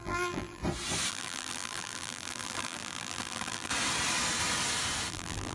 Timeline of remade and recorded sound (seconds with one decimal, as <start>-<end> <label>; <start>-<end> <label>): 0.0-0.6 remade; 0.6-1.1 recorded; 1.1-3.7 remade; 3.7-5.1 recorded; 5.1-5.5 remade